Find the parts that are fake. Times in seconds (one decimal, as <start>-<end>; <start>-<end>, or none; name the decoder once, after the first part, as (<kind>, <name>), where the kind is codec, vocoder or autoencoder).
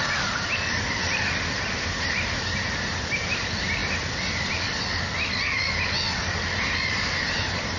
0.0-2.1 (vocoder, BigVGAN v2); 3.8-6.2